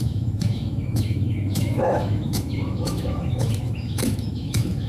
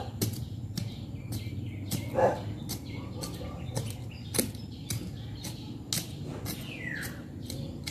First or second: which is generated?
first